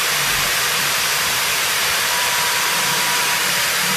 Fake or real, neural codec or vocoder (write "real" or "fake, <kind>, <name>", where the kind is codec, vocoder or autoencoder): fake, vocoder, BigVGAN v2